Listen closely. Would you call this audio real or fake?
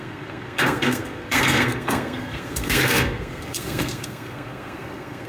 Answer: fake